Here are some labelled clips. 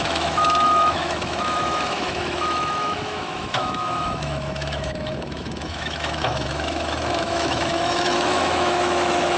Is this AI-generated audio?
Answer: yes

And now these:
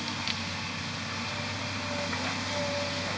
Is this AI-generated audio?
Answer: no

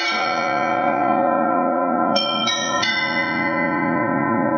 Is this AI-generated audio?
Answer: yes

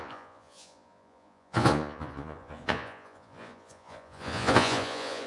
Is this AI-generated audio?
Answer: yes